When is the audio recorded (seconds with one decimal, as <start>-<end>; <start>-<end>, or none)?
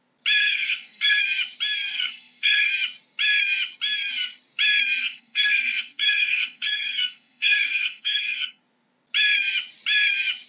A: 0.0-0.4; 1.2-1.9; 2.7-5.0; 8.6-10.5